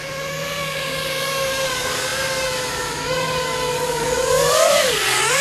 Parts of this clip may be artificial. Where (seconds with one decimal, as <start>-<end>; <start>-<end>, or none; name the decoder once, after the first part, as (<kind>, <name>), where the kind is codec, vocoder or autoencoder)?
0.0-5.4 (codec, DAC)